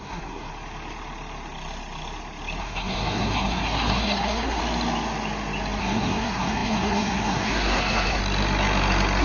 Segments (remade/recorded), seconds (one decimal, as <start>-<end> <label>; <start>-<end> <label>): 0.0-0.5 remade; 0.5-2.6 recorded; 2.6-4.6 remade; 4.6-5.8 recorded; 5.8-8.2 remade; 8.2-9.2 recorded